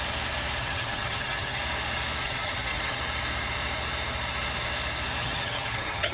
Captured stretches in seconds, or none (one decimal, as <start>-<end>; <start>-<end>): 0.0-0.6; 1.6-2.2; 3.0-5.2